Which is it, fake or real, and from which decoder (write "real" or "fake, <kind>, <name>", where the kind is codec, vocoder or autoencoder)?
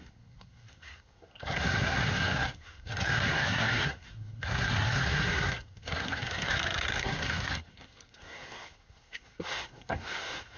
fake, codec, SNAC